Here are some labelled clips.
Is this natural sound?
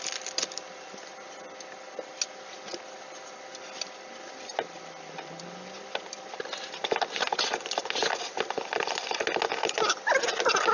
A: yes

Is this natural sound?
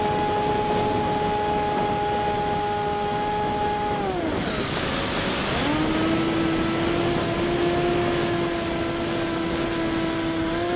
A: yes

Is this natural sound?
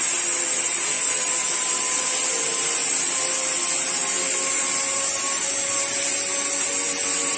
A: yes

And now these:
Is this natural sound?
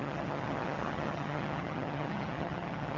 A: no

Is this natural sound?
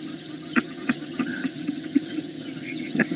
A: no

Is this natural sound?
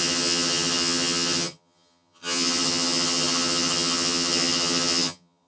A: no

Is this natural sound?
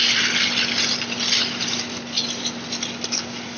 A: yes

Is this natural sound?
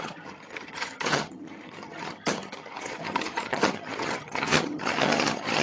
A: no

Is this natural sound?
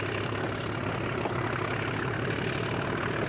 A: yes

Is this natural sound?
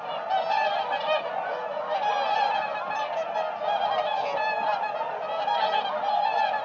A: yes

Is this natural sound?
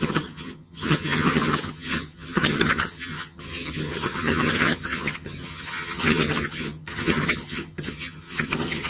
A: no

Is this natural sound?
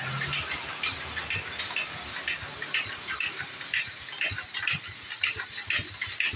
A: yes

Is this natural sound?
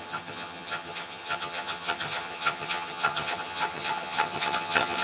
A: no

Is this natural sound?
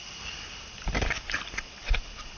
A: yes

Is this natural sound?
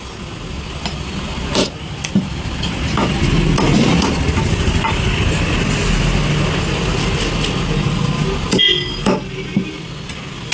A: yes